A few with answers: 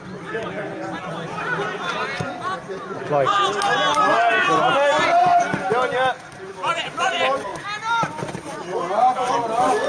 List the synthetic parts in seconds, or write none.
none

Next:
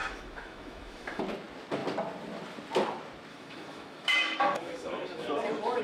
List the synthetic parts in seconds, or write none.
0.0-1.2 (autoencoder, DAC-VAE); 3.3-5.8

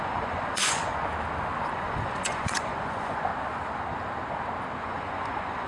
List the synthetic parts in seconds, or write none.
0.0-1.0 (vocoder, Vocos); 1.7-3.3; 4.8-5.7

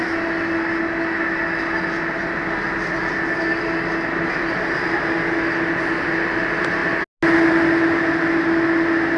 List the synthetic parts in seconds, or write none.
none

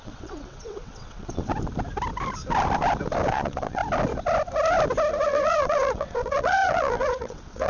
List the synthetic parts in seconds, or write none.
0.0-1.5 (vocoder, WaveNeXt); 3.3-3.8; 5.2-7.7

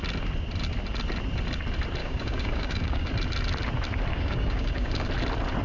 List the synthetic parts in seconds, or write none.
2.0-3.1 (codec, DAC); 4.1-5.1

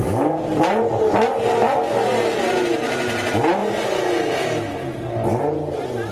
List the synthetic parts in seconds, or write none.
none

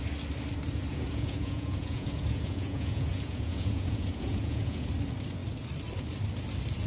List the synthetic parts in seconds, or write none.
0.9-4.9 (vocoder, Vocos)